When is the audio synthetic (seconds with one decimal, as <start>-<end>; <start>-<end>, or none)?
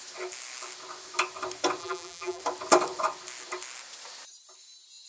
1.8-2.4